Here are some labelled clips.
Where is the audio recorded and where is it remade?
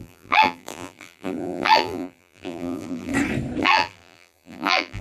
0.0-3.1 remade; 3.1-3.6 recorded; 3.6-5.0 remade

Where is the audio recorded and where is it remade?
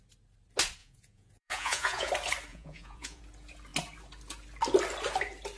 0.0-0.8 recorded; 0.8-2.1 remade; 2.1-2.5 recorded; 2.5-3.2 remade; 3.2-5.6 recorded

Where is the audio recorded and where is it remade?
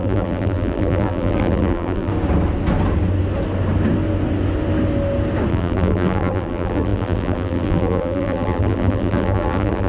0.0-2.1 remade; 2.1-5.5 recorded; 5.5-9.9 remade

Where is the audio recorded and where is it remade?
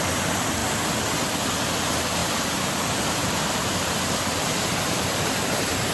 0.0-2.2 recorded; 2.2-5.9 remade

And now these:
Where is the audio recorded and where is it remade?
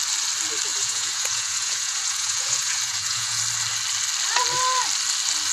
0.0-0.7 recorded; 0.7-3.4 remade; 3.4-5.5 recorded